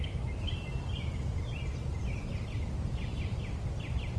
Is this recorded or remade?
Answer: recorded